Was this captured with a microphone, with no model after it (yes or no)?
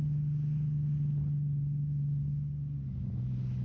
yes